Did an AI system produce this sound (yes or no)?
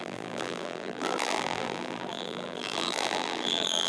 yes